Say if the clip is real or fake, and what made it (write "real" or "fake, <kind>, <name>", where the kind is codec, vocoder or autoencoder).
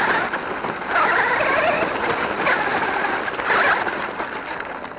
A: real